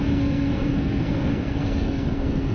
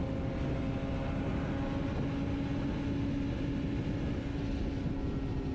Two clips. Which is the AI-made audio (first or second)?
first